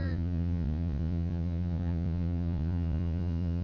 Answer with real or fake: fake